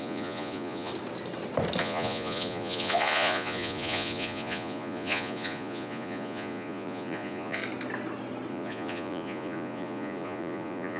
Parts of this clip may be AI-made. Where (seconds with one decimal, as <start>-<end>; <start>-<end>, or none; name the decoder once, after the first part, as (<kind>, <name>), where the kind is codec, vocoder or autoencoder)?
0.0-0.9 (vocoder, Vocos); 1.8-7.6; 8.5-11.0